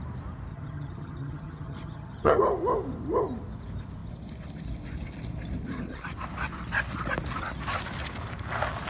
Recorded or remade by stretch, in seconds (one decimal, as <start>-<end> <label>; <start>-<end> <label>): 0.0-0.5 recorded; 0.5-2.4 remade; 2.4-8.9 recorded